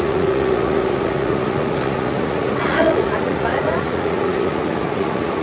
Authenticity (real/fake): fake